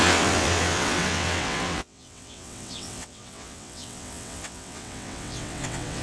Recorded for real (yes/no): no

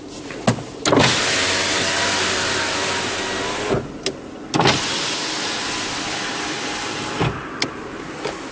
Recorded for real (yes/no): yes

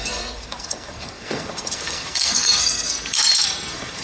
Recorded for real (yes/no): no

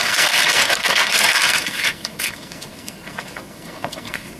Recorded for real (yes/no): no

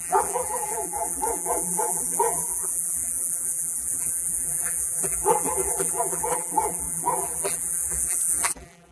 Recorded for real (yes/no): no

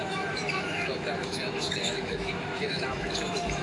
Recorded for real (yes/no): no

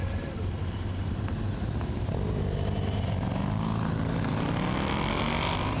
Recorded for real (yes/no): yes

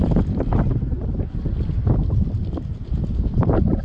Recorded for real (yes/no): yes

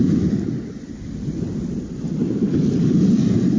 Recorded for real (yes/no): yes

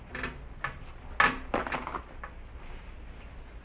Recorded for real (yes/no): yes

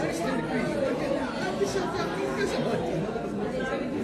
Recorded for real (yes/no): yes